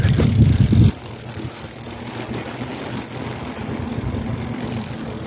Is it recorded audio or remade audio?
recorded